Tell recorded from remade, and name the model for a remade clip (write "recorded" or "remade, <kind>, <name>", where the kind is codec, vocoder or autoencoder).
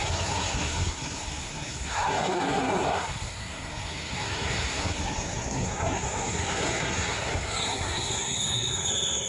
remade, codec, SNAC